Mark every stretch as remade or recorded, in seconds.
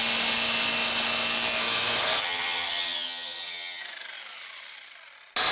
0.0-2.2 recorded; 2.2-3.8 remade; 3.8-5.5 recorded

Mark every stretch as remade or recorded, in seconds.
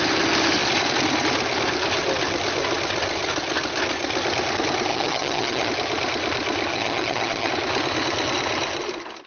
0.0-4.9 recorded; 4.9-5.7 remade; 5.7-6.7 recorded; 6.7-7.5 remade; 7.5-9.3 recorded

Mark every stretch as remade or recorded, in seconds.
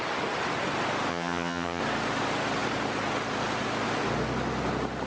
0.0-1.1 recorded; 1.1-1.8 remade; 1.8-5.1 recorded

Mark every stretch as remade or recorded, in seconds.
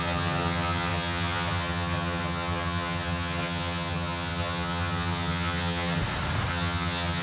0.0-6.0 remade; 6.0-6.5 recorded; 6.5-7.2 remade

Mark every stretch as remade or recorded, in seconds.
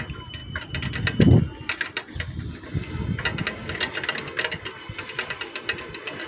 0.0-6.3 recorded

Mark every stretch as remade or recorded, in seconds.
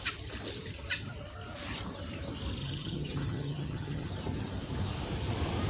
0.0-2.6 recorded; 2.6-4.1 remade; 4.1-5.7 recorded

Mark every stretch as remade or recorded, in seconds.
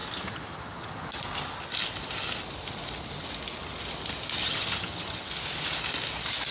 0.0-1.2 remade; 1.2-4.4 recorded; 4.4-5.3 remade; 5.3-6.5 recorded